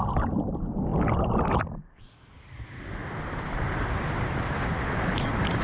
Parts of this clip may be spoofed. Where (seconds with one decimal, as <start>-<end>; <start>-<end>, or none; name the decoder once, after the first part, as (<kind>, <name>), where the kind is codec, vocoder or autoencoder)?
3.0-5.6 (vocoder, BigVGAN v2)